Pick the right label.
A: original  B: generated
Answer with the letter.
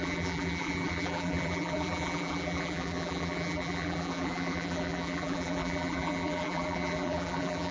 B